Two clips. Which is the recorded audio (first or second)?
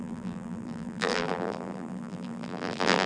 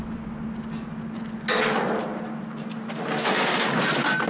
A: second